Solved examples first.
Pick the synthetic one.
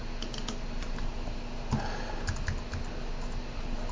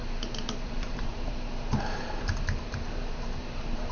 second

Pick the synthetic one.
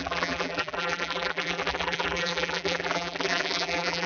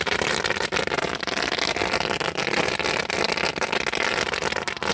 first